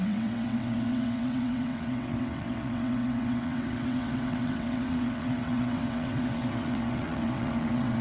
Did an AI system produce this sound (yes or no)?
yes